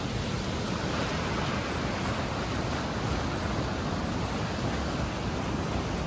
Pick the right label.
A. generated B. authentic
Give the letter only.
B